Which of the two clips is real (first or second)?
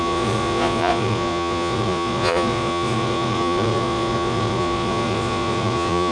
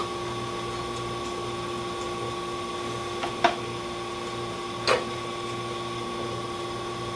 second